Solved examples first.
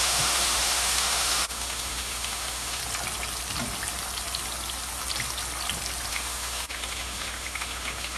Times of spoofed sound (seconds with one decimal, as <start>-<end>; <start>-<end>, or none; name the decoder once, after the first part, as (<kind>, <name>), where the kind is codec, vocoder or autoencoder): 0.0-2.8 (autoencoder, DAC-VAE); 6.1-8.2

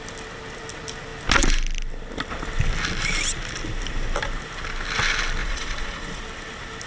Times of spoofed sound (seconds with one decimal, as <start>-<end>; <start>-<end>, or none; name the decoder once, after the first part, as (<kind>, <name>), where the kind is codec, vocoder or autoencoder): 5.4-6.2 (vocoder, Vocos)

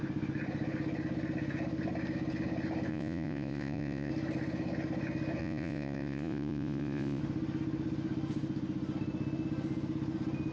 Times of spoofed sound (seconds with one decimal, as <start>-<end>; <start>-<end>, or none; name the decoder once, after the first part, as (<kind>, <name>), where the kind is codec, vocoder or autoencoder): 2.9-4.1 (vocoder, Vocos); 5.4-7.2